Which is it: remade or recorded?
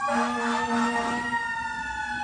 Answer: recorded